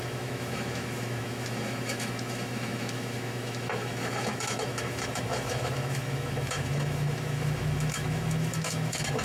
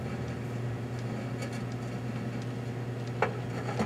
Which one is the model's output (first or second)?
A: first